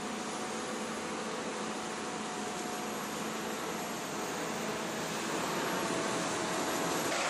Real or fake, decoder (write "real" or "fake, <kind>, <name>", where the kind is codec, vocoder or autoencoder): real